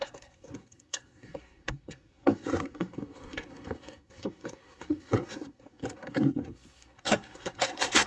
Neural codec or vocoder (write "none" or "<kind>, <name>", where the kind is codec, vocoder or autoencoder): codec, SNAC